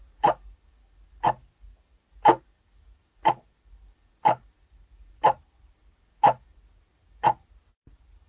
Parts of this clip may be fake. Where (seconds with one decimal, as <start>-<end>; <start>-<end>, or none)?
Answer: none